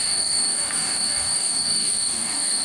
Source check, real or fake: fake